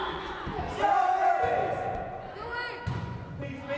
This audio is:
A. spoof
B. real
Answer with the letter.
A